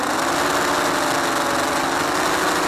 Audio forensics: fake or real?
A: real